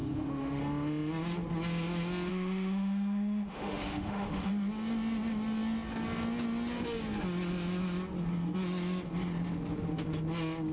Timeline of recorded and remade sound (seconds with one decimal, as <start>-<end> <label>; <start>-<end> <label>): 0.0-0.6 remade; 0.6-2.3 recorded; 2.3-4.5 remade; 4.5-10.7 recorded